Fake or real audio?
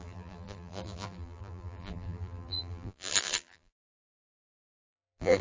fake